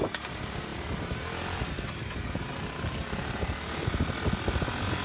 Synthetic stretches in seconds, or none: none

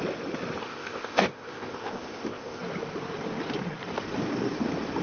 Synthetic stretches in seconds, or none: 0.6-2.6 (codec, ZipCodec)

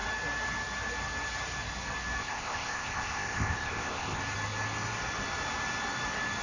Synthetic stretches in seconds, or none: 2.2-4.2 (codec, ZipCodec)